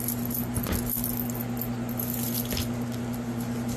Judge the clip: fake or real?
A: real